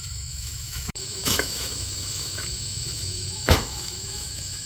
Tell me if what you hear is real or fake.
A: fake